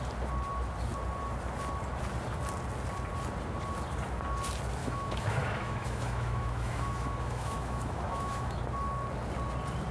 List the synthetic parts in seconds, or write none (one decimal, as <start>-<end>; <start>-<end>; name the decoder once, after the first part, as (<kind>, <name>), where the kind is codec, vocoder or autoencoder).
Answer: 4.8-8.6 (autoencoder, DAC-VAE)